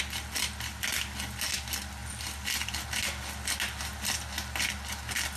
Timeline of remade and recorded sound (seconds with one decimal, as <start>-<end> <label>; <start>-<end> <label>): 0.0-5.4 recorded